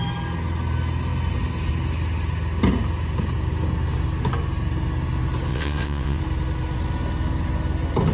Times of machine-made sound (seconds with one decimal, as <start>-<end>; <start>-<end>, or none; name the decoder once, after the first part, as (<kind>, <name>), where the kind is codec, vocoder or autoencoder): 5.5-6.2 (vocoder, WaveNeXt)